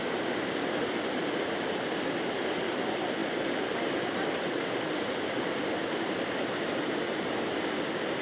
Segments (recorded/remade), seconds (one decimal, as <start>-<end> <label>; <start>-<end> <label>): 0.0-3.2 recorded; 3.2-6.6 remade; 6.6-8.2 recorded